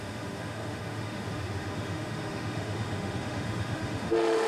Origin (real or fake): fake